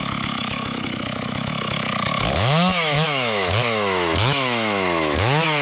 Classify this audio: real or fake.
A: fake